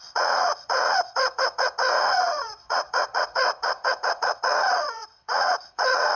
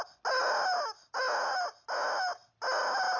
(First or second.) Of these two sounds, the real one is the second